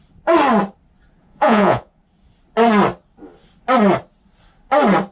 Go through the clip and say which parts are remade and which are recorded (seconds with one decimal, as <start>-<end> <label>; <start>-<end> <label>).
0.0-1.2 recorded; 1.2-2.0 remade; 2.0-5.1 recorded